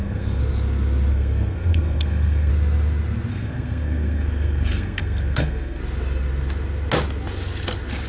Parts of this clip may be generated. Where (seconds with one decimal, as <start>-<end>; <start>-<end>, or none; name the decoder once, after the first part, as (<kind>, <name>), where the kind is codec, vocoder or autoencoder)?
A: 0.0-0.4 (codec, SNAC); 1.1-2.5; 3.3-5.8